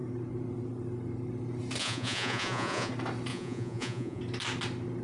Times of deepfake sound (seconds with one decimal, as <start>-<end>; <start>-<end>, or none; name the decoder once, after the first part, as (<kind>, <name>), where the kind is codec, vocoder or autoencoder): 1.8-2.9 (vocoder, Vocos); 3.3-4.2